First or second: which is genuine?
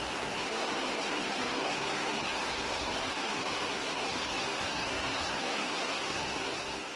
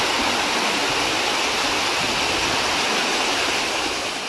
second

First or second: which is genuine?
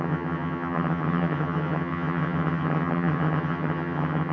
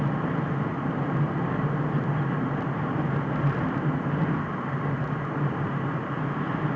second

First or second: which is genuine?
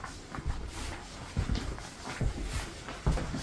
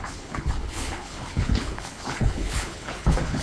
first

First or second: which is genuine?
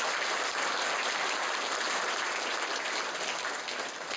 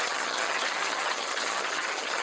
first